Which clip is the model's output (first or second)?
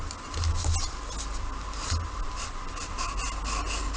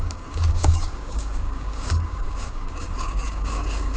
second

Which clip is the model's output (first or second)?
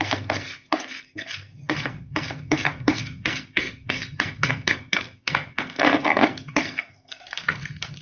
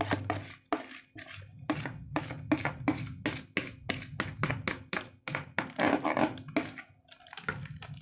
first